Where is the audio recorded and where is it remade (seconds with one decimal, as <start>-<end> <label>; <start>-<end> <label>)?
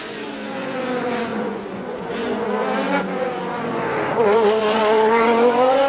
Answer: 0.0-5.9 remade